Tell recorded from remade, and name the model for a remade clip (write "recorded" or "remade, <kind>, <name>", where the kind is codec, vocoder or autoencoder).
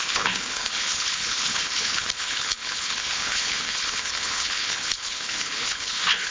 remade, codec, HILCodec